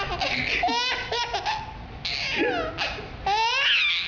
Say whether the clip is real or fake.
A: real